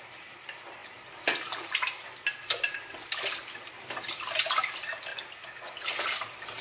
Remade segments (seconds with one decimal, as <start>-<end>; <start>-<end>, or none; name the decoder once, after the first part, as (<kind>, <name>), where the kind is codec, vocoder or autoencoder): none